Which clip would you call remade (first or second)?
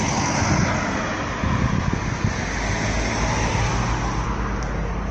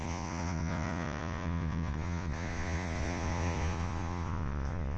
second